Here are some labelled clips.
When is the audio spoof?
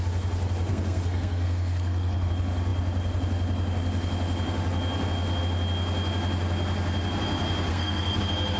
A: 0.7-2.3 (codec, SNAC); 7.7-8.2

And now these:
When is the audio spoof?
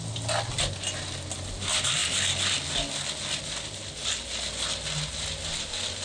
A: none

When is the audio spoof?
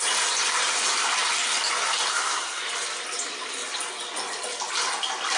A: 2.1-2.6 (codec, SNAC)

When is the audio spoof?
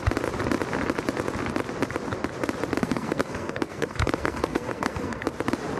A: 2.8-5.3 (codec, SNAC)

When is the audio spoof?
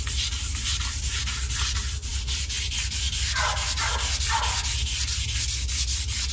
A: none